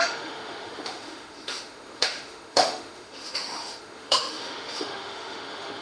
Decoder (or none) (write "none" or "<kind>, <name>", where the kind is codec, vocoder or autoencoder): autoencoder, DAC-VAE